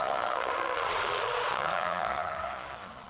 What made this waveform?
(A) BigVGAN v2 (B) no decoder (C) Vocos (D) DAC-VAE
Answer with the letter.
C